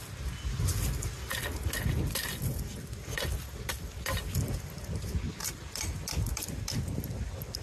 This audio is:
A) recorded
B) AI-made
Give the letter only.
A